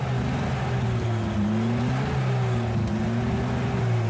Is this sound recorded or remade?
recorded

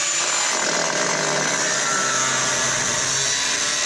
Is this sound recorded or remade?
recorded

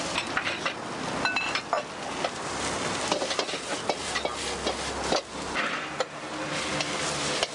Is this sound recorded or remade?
recorded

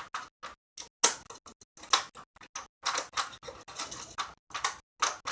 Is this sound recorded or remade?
recorded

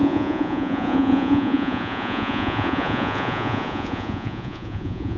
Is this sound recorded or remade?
remade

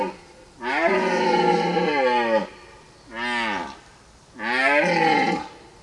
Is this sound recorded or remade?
recorded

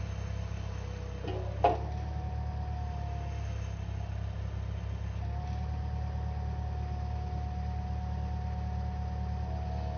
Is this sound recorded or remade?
recorded